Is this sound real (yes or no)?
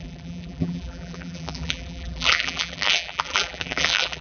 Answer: no